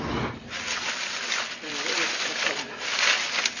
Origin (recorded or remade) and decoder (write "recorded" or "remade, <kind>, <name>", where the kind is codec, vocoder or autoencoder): recorded